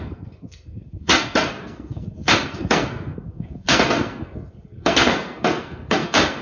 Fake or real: fake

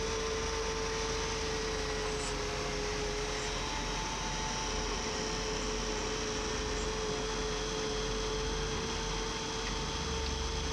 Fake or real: real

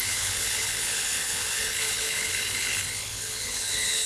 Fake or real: fake